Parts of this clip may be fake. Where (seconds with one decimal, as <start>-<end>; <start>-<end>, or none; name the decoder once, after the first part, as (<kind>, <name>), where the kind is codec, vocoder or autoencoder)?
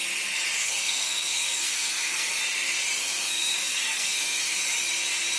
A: 0.6-2.4 (codec, SNAC); 3.0-4.6